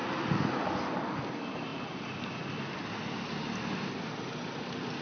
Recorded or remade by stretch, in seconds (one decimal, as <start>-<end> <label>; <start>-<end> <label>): 0.0-5.0 recorded